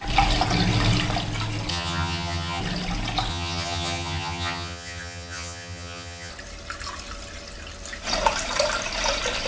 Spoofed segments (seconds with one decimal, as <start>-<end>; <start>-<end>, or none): 1.7-2.6; 3.3-6.3